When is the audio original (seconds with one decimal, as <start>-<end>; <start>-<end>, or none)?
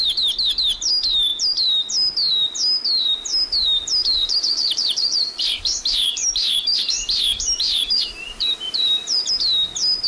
0.0-4.2; 9.3-10.1